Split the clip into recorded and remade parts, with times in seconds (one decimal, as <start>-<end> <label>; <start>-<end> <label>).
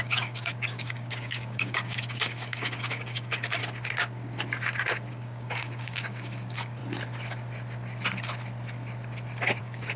0.0-3.6 remade; 3.6-5.1 recorded; 5.1-6.8 remade; 6.8-9.6 recorded; 9.6-10.0 remade